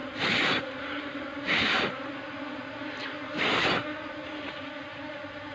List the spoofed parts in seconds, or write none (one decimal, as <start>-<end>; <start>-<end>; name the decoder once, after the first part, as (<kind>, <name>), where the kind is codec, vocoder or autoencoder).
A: none